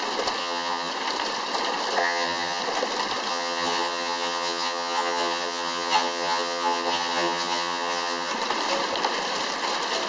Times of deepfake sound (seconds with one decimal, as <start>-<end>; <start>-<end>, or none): 0.4-0.9; 2.0-2.6; 3.3-8.3